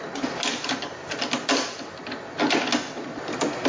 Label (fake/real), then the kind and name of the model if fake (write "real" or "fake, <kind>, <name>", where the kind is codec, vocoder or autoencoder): real